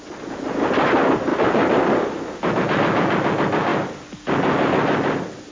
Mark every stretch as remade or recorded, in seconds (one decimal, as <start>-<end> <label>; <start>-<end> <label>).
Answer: 0.0-5.5 recorded